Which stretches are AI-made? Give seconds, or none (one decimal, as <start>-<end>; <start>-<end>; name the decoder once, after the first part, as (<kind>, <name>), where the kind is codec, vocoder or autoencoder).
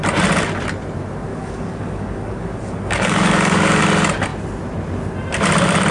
1.3-3.8 (codec, DAC)